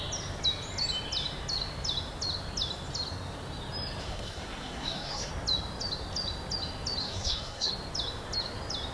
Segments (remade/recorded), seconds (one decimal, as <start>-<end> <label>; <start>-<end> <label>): 0.0-4.0 recorded; 4.0-5.3 remade; 5.3-7.0 recorded; 7.0-7.7 remade; 7.7-8.9 recorded